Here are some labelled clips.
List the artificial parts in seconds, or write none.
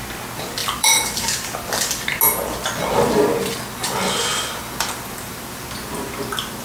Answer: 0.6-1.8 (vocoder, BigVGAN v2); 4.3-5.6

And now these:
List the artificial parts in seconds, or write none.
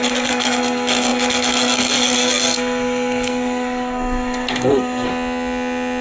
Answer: 0.0-5.1 (codec, SNAC)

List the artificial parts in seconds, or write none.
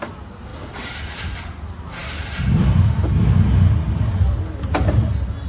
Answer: 0.5-1.5 (vocoder, BigVGAN v2)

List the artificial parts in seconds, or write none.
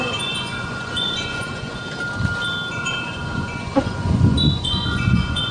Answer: 0.0-1.8 (vocoder, Vocos); 2.7-5.5